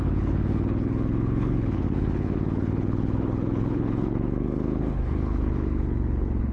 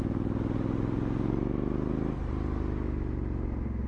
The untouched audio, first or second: second